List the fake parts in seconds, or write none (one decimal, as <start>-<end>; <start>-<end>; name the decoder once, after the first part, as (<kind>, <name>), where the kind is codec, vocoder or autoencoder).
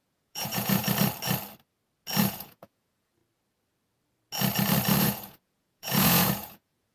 0.0-0.8 (vocoder, Vocos); 2.2-3.2; 5.0-6.9